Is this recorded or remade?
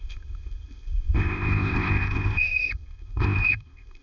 remade